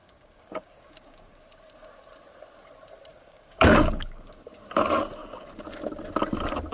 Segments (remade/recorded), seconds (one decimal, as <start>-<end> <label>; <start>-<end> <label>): 0.0-1.4 remade; 1.4-3.1 recorded; 3.1-4.3 remade; 4.3-6.7 recorded